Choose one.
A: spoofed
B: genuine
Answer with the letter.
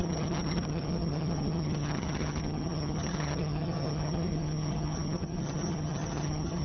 A